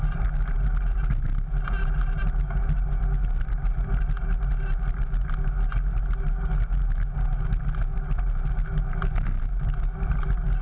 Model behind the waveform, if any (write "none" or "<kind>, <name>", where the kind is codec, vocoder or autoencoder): none